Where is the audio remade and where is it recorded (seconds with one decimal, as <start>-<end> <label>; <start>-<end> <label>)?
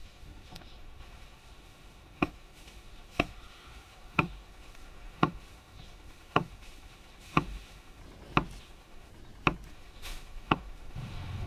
0.0-8.0 remade; 8.0-8.6 recorded; 8.6-9.1 remade; 9.1-9.7 recorded; 9.7-11.5 remade